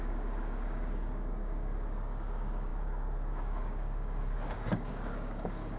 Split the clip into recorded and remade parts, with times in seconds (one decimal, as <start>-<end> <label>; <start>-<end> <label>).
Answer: 0.0-5.8 remade